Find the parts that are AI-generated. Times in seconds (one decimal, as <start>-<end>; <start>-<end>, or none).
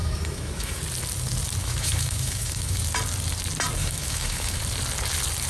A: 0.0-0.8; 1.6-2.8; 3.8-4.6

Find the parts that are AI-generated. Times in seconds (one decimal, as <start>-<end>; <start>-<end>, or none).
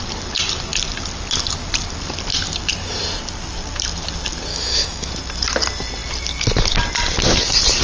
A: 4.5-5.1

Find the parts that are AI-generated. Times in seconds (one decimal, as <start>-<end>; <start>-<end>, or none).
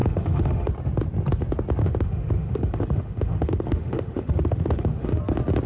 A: 0.0-0.7; 1.8-5.2